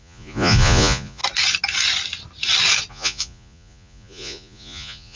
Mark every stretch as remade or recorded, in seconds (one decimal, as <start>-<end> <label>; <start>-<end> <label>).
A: 0.0-1.2 remade; 1.2-2.9 recorded; 2.9-5.2 remade